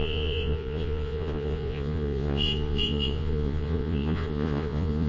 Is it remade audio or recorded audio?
remade